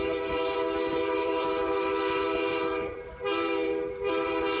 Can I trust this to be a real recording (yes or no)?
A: no